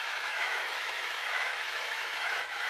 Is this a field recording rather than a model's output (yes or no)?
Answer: no